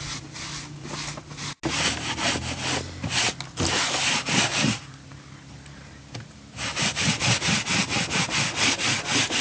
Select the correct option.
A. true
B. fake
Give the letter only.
A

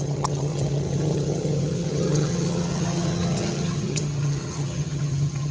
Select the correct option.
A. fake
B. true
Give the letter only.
A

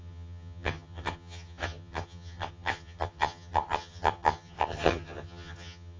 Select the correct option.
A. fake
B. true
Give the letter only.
A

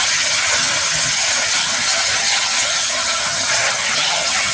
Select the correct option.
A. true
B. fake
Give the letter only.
B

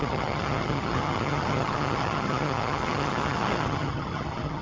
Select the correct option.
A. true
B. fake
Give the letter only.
B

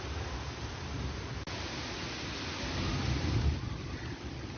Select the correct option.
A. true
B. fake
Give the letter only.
A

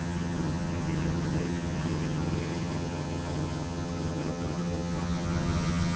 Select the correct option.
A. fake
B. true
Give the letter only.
A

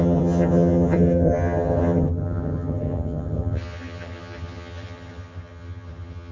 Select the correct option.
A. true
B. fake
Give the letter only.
B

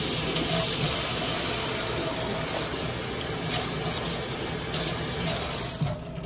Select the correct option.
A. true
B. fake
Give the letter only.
A